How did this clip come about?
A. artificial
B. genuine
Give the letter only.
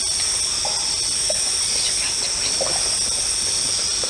B